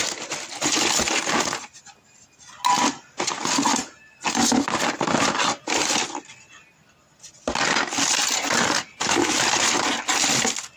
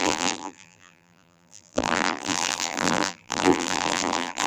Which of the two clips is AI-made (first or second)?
second